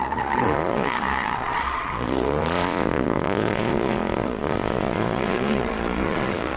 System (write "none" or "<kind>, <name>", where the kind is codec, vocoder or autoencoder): vocoder, Vocos